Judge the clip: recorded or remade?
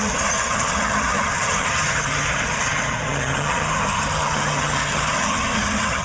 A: remade